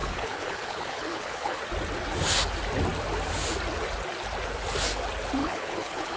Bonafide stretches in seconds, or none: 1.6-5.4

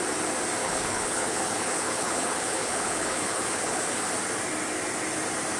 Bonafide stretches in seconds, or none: 0.0-0.6; 4.0-5.6

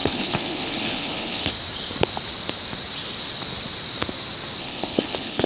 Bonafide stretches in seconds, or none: 1.5-4.6

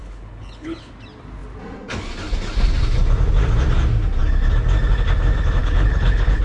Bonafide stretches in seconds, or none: 0.9-5.6

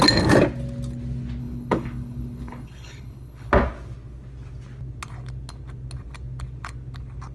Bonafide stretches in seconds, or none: 0.0-1.4; 3.5-7.3